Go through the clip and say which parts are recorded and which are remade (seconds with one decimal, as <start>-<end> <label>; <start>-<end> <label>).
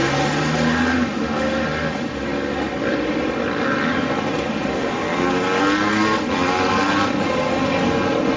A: 0.0-8.4 recorded